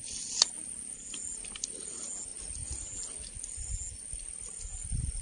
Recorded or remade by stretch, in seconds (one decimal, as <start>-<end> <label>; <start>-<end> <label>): 0.0-5.2 recorded